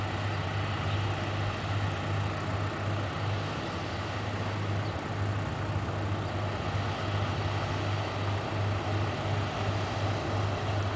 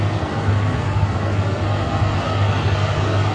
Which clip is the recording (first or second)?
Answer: first